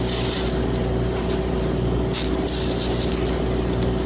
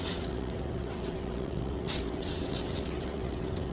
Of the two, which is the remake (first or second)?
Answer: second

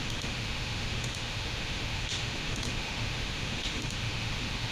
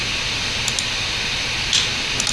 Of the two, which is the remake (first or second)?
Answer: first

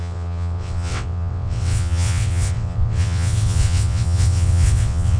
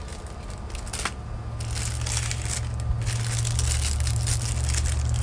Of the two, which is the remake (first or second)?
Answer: first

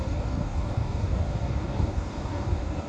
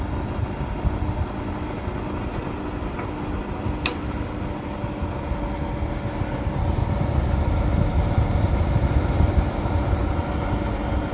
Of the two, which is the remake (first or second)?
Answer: first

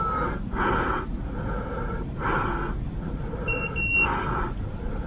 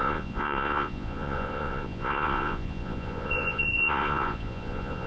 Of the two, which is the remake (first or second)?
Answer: second